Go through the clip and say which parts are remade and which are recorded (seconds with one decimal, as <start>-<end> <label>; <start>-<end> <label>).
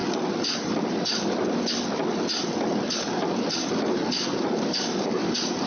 0.0-3.3 recorded; 3.3-5.7 remade